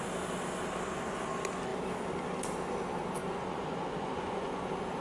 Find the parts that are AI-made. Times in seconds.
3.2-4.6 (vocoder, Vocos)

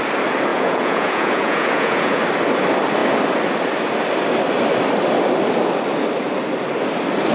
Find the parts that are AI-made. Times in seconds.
0.5-2.2 (vocoder, Vocos)

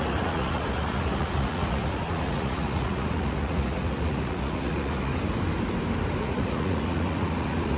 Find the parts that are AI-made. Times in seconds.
0.0-5.1 (vocoder, Vocos); 6.2-7.8

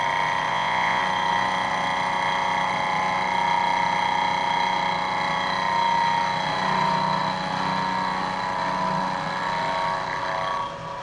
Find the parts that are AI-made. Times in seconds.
0.5-1.0 (vocoder, Vocos)

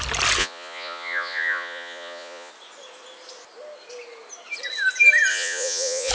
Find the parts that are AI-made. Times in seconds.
0.4-2.5 (vocoder, Vocos); 5.3-6.1

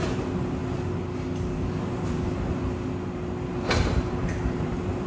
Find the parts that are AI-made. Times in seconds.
none

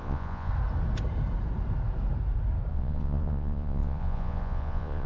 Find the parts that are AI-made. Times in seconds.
0.0-0.5 (vocoder, Vocos); 2.7-5.1

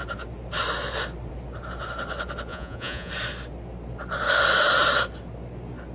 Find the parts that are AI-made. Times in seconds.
2.5-3.1 (vocoder, Vocos)